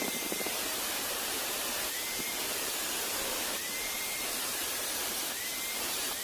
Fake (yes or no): yes